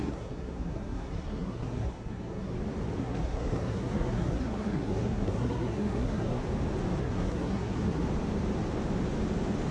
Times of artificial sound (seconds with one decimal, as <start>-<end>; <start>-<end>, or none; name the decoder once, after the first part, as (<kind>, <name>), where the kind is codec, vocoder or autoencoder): 0.0-2.5 (codec, SNAC); 3.0-6.4; 7.0-8.0